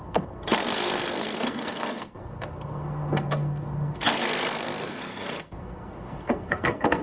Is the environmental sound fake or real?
fake